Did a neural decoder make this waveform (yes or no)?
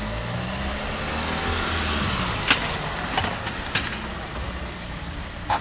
no